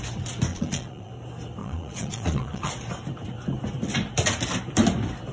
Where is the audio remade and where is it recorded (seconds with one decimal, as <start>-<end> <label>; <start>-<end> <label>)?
0.0-0.5 recorded; 0.5-1.1 remade; 1.1-1.6 recorded; 1.6-2.7 remade; 2.7-5.3 recorded